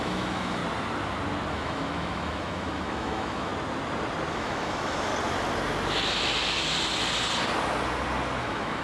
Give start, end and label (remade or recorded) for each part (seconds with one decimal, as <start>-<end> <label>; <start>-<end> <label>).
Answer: 0.0-0.6 remade; 0.6-1.5 recorded; 1.5-3.5 remade; 3.5-4.3 recorded; 4.3-5.1 remade; 5.1-8.4 recorded; 8.4-8.8 remade